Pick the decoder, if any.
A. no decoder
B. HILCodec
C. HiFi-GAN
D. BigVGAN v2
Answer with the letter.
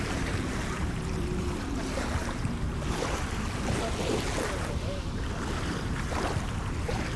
D